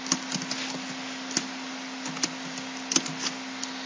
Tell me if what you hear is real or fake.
real